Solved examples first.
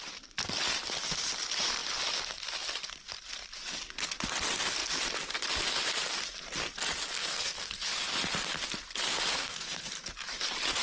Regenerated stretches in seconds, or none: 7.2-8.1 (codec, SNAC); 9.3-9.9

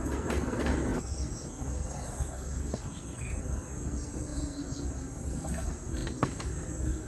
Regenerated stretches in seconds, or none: 0.0-7.1 (codec, SNAC)

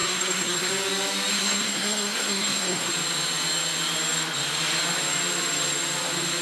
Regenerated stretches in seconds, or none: 0.0-0.7 (codec, SNAC); 1.3-2.9

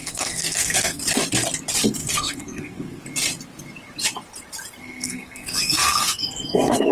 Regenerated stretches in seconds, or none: 0.0-1.0 (codec, SNAC); 2.0-3.0; 4.8-6.9

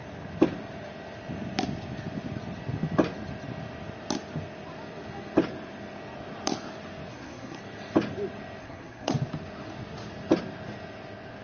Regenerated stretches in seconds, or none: 7.1-7.6 (codec, SNAC); 8.6-9.1

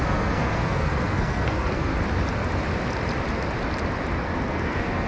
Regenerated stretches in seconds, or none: 0.0-1.9 (codec, SNAC); 4.2-5.1

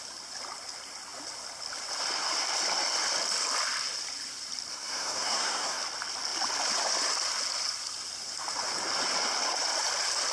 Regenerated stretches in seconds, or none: 4.7-5.8 (codec, SNAC)

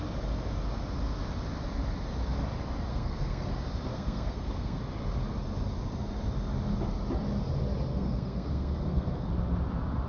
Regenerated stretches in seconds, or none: 2.9-3.5 (codec, SNAC); 3.9-4.8; 7.9-9.3